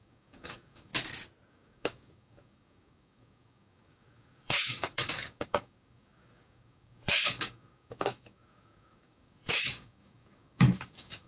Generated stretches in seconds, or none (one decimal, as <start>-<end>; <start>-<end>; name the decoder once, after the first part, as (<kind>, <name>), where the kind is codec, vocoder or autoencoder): 0.0-0.9 (codec, DAC); 1.5-11.3